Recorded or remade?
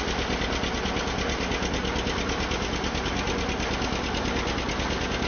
recorded